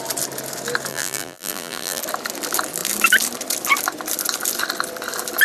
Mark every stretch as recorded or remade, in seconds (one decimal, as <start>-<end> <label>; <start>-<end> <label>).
0.0-0.9 recorded; 0.9-2.0 remade; 2.0-5.4 recorded